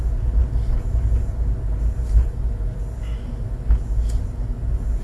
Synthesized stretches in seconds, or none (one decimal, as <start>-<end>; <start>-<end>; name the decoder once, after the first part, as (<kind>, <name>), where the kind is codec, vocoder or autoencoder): none